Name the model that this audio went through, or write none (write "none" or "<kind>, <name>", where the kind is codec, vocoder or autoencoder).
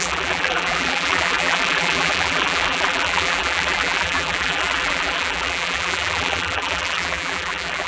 vocoder, BigVGAN v2